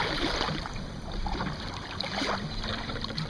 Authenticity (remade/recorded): recorded